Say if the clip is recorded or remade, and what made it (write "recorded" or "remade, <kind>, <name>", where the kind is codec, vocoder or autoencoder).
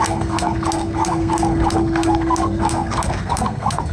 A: remade, codec, SNAC